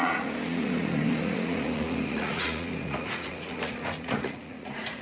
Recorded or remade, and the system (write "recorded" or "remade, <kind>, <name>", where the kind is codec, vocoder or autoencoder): remade, vocoder, Vocos